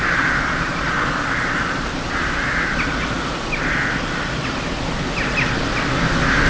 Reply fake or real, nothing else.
real